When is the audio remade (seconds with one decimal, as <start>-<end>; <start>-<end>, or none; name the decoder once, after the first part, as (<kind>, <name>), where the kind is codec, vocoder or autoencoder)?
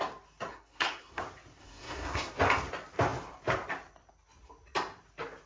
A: 0.5-1.2 (codec, SNAC); 1.6-2.4